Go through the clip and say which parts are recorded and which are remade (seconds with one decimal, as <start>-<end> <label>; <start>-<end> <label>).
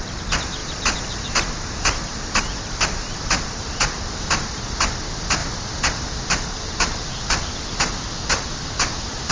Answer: 0.0-5.4 remade; 5.4-6.3 recorded; 6.3-9.3 remade